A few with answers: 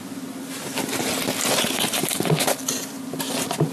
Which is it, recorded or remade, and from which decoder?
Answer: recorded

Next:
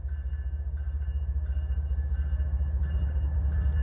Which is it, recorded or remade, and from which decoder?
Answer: recorded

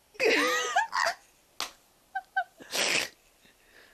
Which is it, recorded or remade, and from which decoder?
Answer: recorded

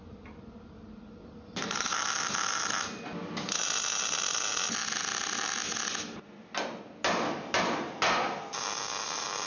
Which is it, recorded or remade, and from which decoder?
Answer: recorded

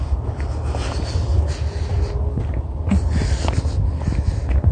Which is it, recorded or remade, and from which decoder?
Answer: recorded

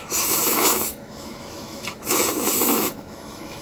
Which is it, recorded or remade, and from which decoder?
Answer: remade, autoencoder, DAC-VAE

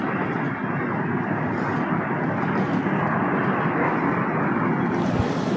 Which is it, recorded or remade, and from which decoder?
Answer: recorded